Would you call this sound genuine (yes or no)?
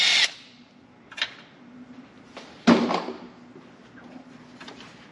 yes